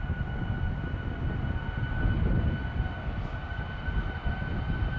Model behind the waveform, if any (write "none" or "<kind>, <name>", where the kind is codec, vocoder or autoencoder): none